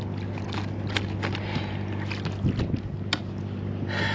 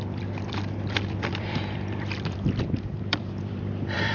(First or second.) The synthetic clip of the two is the second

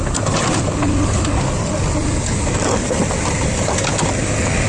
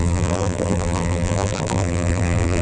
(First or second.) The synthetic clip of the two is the second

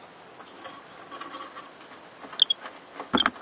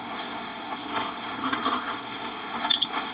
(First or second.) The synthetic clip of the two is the second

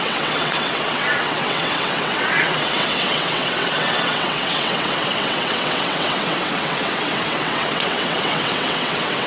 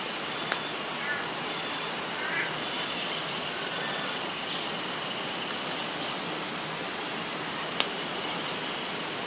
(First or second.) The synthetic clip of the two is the first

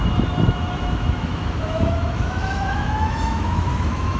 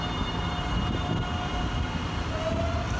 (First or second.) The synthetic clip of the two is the first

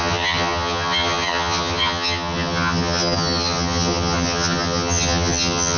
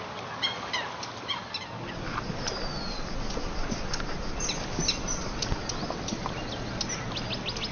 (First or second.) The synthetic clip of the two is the first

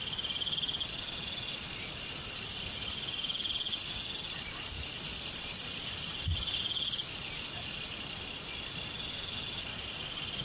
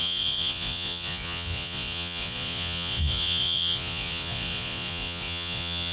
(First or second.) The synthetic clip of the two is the second